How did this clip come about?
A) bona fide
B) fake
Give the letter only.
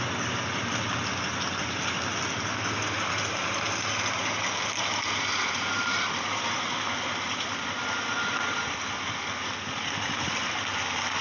A